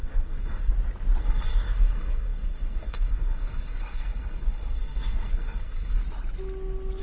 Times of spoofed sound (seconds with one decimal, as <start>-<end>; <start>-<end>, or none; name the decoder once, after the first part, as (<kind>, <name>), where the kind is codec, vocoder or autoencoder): 0.0-0.7 (codec, SNAC); 1.2-6.0